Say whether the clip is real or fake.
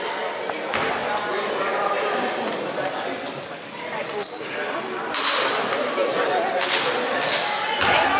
real